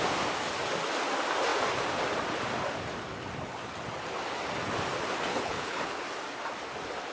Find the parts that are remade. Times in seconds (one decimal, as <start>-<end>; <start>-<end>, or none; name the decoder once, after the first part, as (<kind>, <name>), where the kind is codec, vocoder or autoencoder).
5.3-6.0 (codec, HILCodec)